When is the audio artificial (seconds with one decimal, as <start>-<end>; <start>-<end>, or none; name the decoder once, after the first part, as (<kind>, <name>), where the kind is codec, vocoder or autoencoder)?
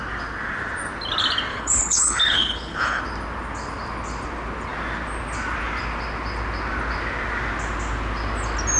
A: 1.5-3.0 (codec, HILCodec)